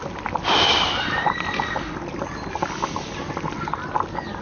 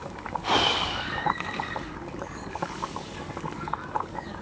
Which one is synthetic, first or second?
second